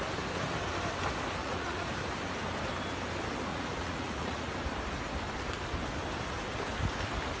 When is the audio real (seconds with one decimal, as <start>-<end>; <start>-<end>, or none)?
0.0-1.4; 1.9-3.5; 4.5-7.4